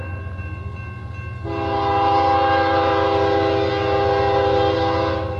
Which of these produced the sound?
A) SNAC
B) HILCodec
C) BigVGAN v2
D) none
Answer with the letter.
D